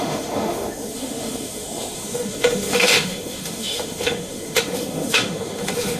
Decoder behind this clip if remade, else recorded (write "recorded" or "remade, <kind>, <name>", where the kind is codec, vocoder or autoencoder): remade, autoencoder, DAC-VAE